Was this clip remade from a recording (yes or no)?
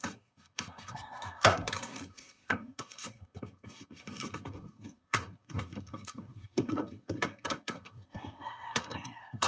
yes